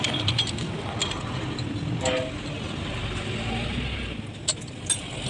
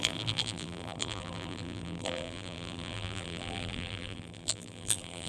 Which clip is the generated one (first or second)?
second